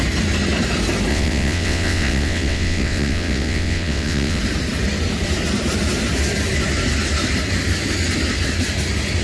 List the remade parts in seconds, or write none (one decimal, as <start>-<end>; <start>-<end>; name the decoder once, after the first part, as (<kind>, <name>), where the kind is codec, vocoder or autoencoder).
1.1-4.4 (vocoder, WaveNeXt)